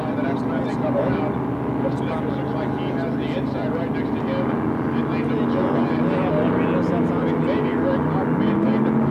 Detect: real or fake real